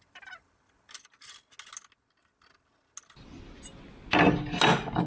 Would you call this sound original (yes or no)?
yes